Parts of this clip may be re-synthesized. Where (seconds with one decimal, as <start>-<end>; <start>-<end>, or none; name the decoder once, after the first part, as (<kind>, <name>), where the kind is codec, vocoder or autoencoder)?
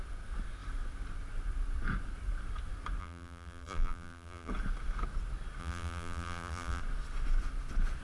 3.0-4.5 (vocoder, BigVGAN v2); 5.6-6.8